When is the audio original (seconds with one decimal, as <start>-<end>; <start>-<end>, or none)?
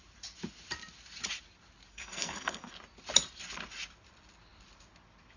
0.0-1.9; 2.7-5.4